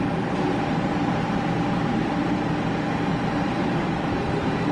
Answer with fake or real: real